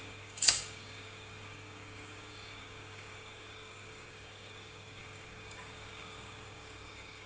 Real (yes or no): no